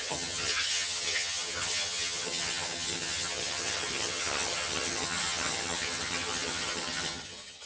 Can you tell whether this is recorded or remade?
remade